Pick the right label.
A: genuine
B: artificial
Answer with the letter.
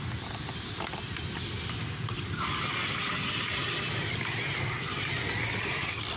B